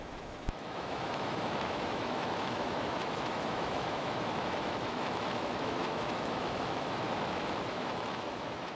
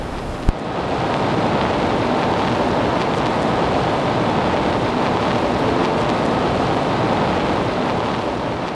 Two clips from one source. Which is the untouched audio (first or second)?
second